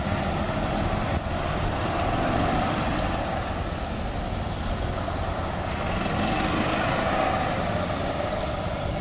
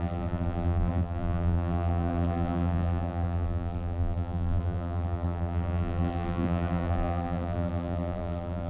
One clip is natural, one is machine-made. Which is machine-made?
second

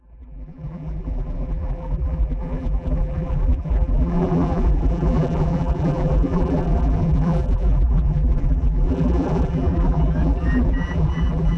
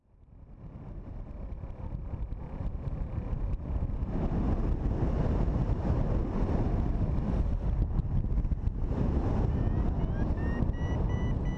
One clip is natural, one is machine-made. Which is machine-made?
first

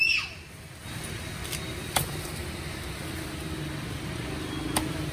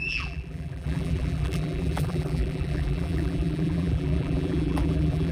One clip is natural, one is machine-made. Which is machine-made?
second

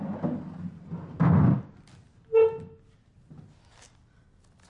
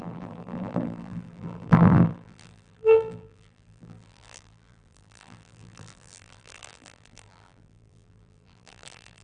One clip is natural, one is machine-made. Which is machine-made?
second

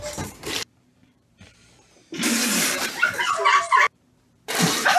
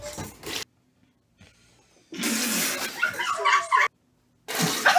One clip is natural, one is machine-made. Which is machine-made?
first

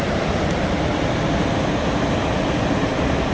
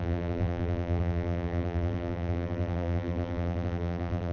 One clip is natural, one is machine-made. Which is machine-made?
second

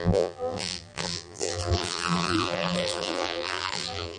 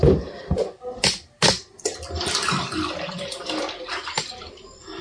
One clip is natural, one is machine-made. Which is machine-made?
first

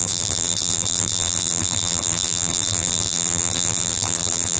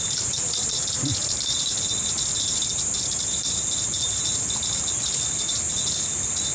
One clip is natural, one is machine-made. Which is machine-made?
first